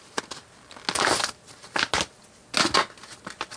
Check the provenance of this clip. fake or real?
real